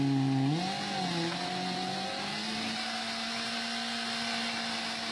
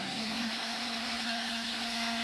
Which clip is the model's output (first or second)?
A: second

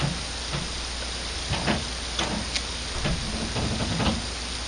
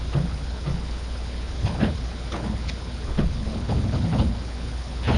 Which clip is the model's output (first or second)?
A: second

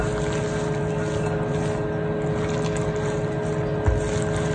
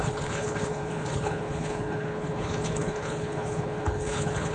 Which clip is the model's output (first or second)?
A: second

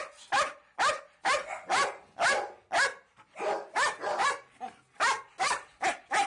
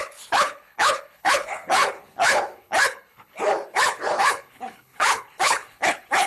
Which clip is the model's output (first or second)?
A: second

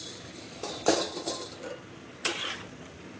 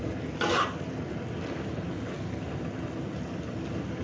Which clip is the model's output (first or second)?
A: first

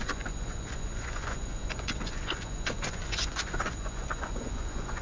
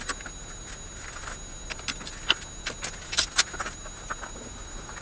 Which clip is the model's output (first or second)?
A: first